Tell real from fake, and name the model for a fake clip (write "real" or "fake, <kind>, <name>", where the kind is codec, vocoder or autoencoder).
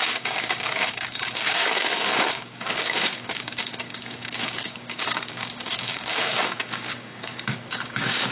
fake, codec, DAC